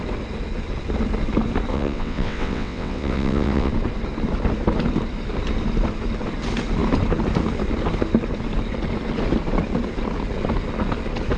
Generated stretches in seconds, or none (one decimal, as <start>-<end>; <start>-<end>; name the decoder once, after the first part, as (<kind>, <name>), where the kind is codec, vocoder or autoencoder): 1.7-3.7 (vocoder, WaveNeXt)